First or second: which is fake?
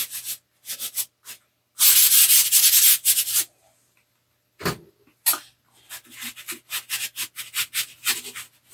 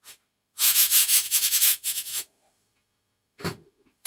second